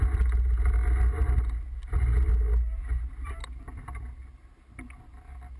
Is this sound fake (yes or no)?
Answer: no